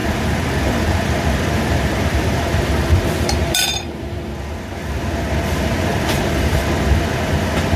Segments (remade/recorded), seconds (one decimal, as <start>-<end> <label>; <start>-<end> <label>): 0.0-4.3 remade; 4.3-5.9 recorded; 5.9-6.6 remade; 6.6-7.8 recorded